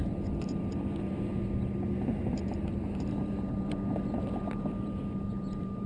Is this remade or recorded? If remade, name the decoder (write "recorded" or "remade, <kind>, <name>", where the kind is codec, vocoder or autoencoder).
remade, vocoder, BigVGAN v2